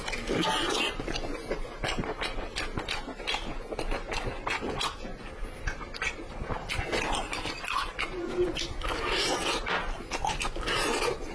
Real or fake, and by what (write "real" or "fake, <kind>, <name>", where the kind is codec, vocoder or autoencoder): real